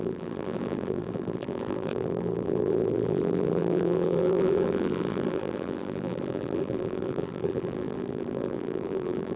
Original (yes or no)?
no